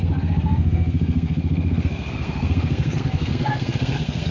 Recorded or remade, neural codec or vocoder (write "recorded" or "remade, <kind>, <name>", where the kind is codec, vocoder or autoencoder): remade, codec, SNAC